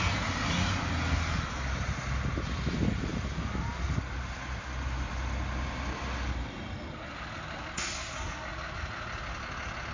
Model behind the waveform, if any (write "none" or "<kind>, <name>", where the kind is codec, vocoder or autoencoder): none